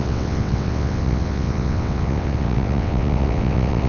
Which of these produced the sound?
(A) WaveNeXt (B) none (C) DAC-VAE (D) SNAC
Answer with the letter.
A